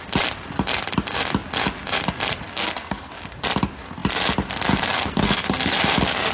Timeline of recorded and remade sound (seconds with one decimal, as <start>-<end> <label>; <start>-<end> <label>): 0.0-2.5 recorded; 2.5-3.1 remade; 3.1-4.9 recorded; 4.9-5.7 remade; 5.7-6.3 recorded